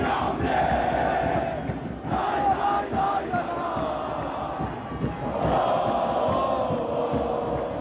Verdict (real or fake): real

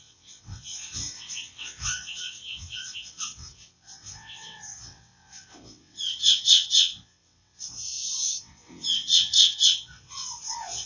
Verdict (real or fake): fake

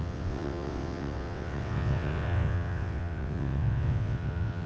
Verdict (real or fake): fake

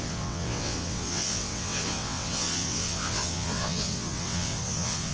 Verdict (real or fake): fake